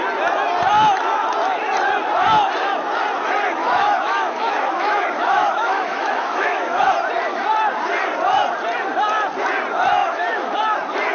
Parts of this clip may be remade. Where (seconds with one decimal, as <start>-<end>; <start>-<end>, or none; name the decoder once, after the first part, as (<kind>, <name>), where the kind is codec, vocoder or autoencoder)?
3.6-6.9 (autoencoder, DAC-VAE); 10.0-10.6